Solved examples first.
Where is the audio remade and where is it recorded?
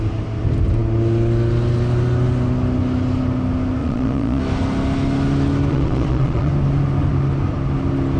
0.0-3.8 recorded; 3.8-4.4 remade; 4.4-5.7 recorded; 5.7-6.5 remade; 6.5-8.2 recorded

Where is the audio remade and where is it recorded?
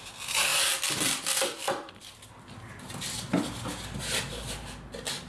0.0-5.3 recorded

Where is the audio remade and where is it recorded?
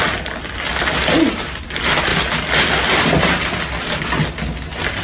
0.0-5.0 recorded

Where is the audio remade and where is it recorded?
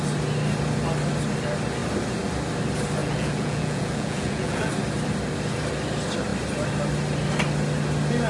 0.0-3.0 recorded; 3.0-4.7 remade; 4.7-8.3 recorded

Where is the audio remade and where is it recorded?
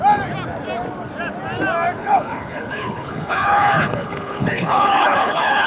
0.0-2.0 recorded; 2.0-5.7 remade